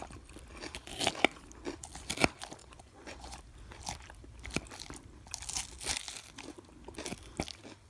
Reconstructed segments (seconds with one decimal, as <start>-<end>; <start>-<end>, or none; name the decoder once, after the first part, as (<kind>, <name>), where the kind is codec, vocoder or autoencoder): 2.6-3.4 (vocoder, Vocos)

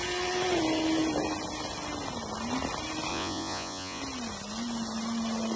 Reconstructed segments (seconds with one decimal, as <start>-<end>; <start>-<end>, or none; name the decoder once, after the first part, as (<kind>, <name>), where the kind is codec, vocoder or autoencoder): 3.1-4.0 (vocoder, Vocos)

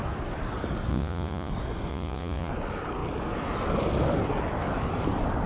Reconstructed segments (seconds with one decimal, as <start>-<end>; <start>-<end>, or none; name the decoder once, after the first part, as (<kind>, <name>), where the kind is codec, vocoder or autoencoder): 0.9-1.5 (vocoder, Vocos); 1.9-2.5

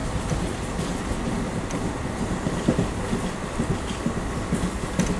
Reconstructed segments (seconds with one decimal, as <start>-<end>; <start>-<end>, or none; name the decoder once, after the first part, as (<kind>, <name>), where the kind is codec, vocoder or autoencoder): none

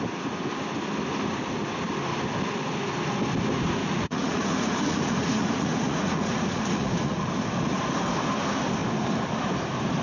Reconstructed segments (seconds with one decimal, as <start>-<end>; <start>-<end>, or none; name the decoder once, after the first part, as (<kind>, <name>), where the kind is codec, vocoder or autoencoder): 3.8-7.3 (vocoder, Vocos)

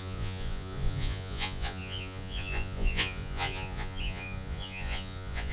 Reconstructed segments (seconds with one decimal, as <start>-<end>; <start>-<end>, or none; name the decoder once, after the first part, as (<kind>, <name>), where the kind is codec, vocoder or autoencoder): 0.0-5.5 (vocoder, Vocos)